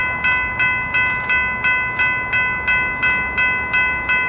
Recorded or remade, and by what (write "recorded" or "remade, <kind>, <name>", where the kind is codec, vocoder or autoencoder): recorded